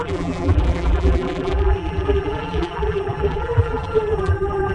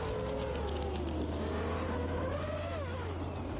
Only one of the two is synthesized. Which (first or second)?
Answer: first